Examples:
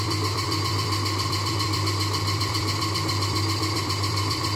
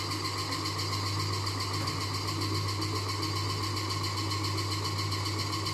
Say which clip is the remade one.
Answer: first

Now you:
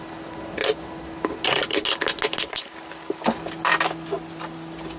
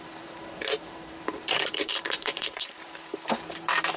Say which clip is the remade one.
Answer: second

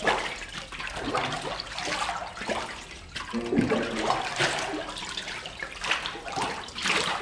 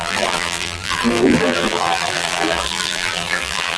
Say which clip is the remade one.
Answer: second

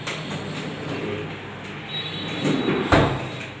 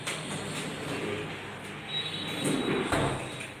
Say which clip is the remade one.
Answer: first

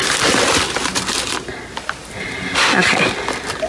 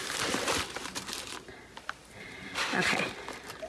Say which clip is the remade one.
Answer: second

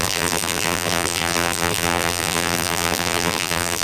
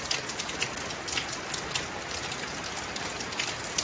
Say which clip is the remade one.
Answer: first